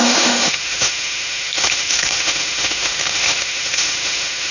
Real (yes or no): no